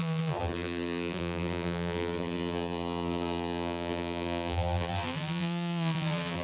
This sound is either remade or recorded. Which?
remade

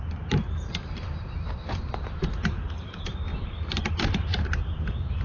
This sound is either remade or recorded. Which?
remade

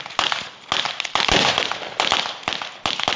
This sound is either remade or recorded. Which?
recorded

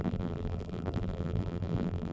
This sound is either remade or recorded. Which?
remade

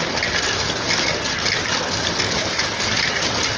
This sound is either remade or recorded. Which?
recorded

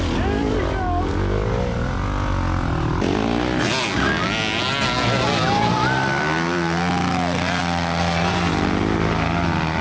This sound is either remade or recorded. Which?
recorded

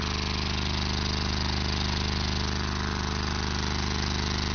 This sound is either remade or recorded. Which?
recorded